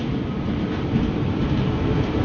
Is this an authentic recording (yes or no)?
yes